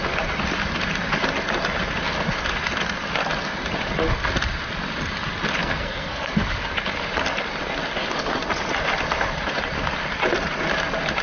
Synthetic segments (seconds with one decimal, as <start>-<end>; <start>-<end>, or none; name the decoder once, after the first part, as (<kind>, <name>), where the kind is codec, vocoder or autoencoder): 5.6-6.3 (codec, SNAC)